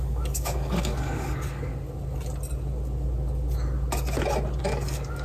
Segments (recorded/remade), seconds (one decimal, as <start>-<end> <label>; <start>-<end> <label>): 0.0-1.7 remade; 1.7-4.6 recorded; 4.6-5.2 remade